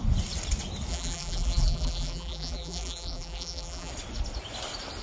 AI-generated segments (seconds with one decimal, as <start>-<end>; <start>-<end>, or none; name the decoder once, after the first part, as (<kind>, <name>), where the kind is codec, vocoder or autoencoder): 0.9-3.9 (vocoder, BigVGAN v2)